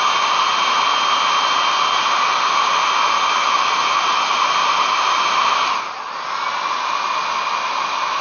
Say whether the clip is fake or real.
real